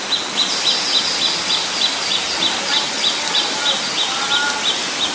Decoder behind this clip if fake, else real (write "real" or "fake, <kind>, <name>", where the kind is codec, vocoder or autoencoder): real